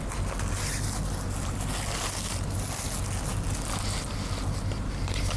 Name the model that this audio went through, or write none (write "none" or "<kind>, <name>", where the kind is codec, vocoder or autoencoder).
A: none